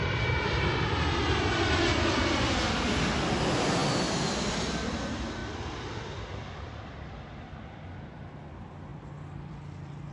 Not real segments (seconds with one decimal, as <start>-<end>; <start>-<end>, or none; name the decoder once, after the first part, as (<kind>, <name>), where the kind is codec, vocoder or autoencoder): 5.4-7.2 (vocoder, BigVGAN v2)